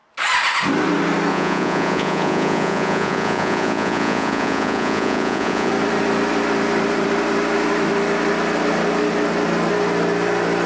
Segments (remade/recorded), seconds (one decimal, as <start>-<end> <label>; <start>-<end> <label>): 0.0-1.3 recorded; 1.3-5.7 remade; 5.7-10.7 recorded